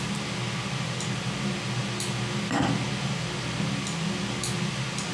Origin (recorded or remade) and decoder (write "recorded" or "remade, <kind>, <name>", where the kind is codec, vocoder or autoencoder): recorded